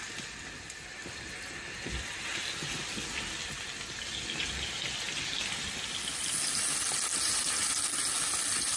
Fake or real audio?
real